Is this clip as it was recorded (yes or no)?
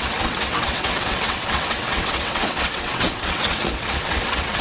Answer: no